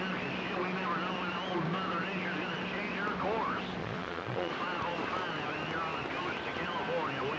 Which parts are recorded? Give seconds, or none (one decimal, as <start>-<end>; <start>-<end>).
0.0-3.8; 4.5-7.4